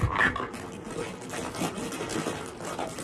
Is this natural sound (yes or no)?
yes